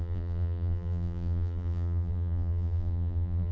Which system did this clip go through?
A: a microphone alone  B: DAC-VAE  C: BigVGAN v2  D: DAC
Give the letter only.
C